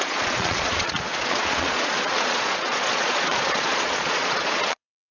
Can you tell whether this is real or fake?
fake